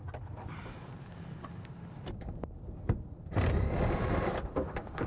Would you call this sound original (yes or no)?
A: no